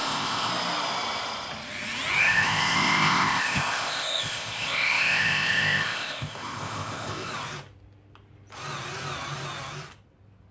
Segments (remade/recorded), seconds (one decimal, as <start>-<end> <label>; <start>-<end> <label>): 0.0-0.5 remade; 0.5-2.2 recorded; 2.2-7.3 remade; 7.3-10.5 recorded